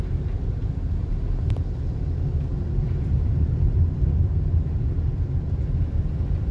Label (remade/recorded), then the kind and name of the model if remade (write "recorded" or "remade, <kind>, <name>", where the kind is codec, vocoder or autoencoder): remade, vocoder, BigVGAN v2